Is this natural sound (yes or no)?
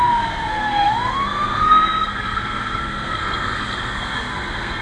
no